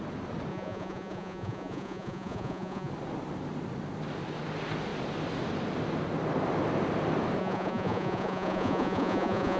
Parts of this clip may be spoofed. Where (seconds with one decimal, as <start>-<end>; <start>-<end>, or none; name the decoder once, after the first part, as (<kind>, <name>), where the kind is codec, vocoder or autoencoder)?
0.5-2.9 (vocoder, Vocos); 7.4-9.6